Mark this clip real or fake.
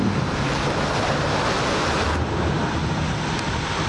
real